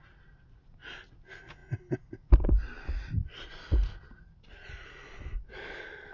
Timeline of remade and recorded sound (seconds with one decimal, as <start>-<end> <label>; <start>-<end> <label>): 0.0-6.1 recorded